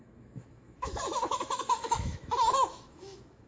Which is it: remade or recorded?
remade